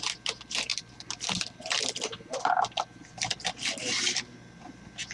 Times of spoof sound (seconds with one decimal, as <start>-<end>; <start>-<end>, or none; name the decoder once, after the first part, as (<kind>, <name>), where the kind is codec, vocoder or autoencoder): none